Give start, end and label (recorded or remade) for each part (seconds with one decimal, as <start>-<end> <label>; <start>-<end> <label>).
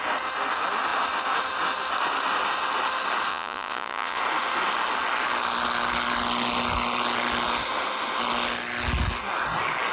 0.0-3.3 recorded; 3.3-4.2 remade; 4.2-9.9 recorded